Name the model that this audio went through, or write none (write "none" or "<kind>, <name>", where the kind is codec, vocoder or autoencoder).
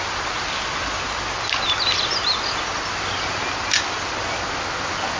none